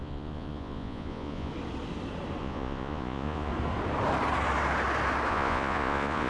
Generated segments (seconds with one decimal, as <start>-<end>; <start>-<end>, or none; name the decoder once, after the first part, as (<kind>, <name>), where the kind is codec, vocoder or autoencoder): 0.0-1.5 (vocoder, Vocos); 2.4-3.5; 5.3-6.3